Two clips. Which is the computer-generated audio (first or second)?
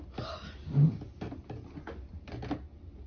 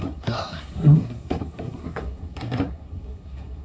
second